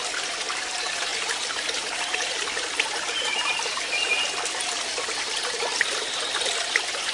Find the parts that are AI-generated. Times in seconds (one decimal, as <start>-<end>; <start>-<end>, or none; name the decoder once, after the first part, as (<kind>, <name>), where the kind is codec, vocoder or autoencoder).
none